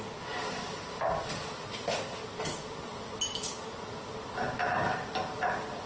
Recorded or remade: recorded